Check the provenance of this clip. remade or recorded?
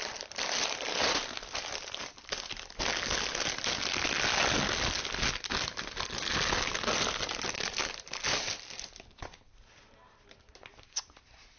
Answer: recorded